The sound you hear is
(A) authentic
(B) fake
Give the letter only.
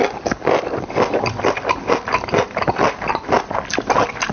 A